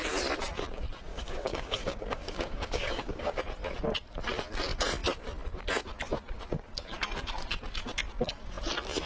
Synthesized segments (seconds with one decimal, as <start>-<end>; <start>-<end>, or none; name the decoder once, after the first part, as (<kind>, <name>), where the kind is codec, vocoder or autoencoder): 1.1-3.4 (codec, DAC)